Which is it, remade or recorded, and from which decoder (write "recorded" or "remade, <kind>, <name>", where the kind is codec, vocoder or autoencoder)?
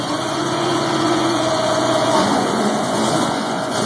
remade, vocoder, Vocos